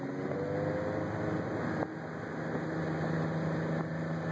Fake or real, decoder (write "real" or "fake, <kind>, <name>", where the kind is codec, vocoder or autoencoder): real